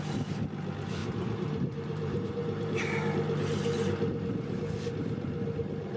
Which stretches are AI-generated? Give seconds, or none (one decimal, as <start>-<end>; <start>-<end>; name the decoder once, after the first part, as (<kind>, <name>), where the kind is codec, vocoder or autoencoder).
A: 1.0-2.8 (vocoder, BigVGAN v2)